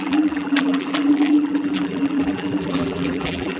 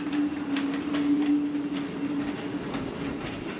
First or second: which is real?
second